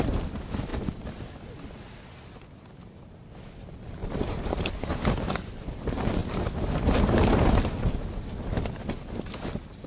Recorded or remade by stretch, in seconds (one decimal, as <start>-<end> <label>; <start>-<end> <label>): 0.0-4.0 recorded; 4.0-4.7 remade; 4.7-6.2 recorded; 6.2-7.6 remade; 7.6-9.9 recorded